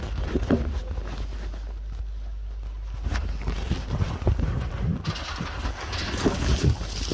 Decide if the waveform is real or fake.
real